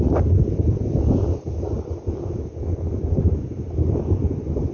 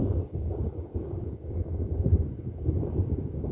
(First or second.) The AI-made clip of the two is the second